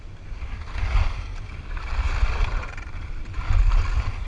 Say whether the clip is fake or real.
real